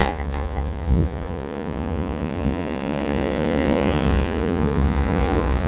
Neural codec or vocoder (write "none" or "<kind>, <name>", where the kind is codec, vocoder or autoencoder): vocoder, Vocos